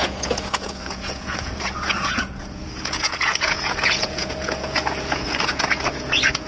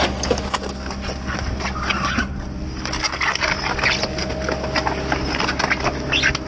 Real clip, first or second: second